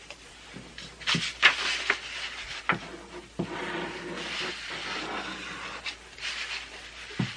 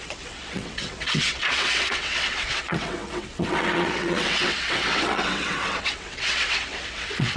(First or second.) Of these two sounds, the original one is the first